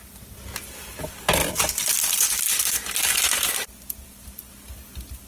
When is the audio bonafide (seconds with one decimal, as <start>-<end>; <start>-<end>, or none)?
0.0-1.4; 3.7-5.3